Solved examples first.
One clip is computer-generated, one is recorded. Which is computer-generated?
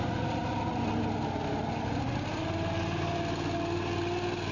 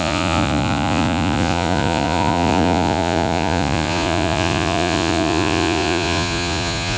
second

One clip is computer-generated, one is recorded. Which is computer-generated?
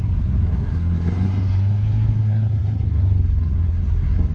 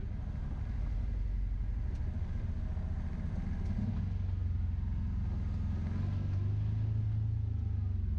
first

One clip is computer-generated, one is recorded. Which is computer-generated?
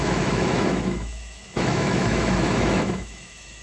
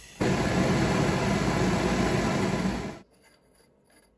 first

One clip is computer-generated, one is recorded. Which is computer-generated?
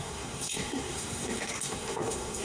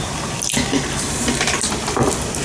first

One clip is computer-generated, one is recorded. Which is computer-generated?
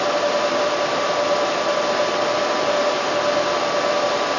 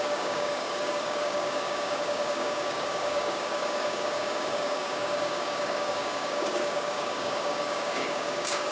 second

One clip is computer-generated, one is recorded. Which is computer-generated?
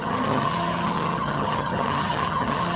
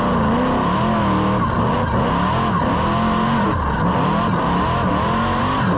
first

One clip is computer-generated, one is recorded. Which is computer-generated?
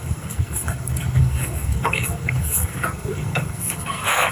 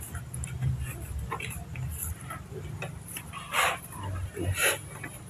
first